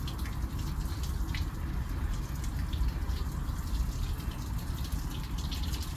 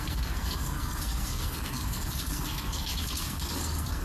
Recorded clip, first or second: first